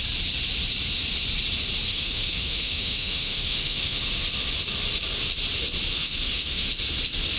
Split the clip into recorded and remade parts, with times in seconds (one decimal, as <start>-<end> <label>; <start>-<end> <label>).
0.0-1.9 recorded; 1.9-4.0 remade; 4.0-5.9 recorded; 5.9-6.7 remade; 6.7-7.4 recorded